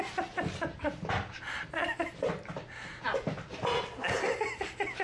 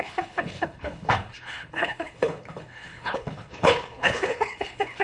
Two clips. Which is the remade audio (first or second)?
second